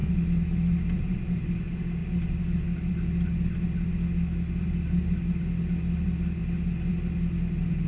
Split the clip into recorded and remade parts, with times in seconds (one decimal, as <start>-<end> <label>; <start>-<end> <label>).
0.0-0.7 remade; 0.7-7.9 recorded